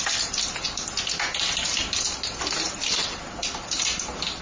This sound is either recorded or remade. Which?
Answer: recorded